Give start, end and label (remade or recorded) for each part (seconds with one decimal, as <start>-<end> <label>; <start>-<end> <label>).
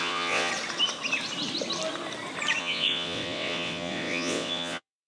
0.0-0.5 remade; 0.5-2.6 recorded; 2.6-5.1 remade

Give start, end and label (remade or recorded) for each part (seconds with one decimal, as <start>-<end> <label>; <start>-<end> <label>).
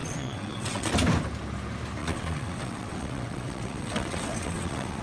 0.0-0.9 remade; 0.9-2.0 recorded; 2.0-5.0 remade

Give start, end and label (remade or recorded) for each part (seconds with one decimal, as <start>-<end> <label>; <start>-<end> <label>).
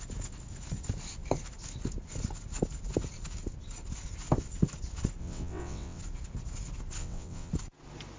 0.0-5.2 recorded; 5.2-6.0 remade; 6.0-7.0 recorded; 7.0-7.5 remade; 7.5-8.2 recorded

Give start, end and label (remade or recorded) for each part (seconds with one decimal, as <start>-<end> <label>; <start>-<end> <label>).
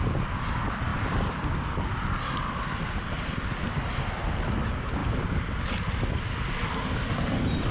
0.0-7.7 recorded